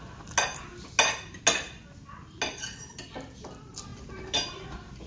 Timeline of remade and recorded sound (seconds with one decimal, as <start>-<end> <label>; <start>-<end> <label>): 0.0-5.1 recorded